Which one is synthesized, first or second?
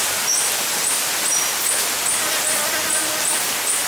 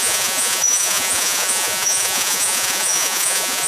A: second